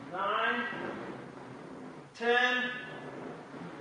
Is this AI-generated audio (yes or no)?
no